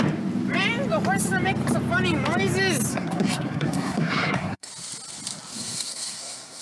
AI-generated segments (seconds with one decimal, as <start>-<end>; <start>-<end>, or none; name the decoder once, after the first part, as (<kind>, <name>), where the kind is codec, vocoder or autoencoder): 2.9-4.7 (codec, SNAC); 5.5-6.6